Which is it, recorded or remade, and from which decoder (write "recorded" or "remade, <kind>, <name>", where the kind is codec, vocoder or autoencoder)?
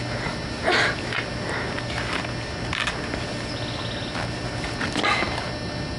recorded